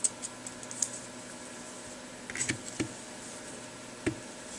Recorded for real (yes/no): yes